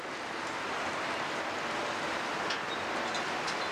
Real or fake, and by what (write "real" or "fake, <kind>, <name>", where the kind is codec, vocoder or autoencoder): real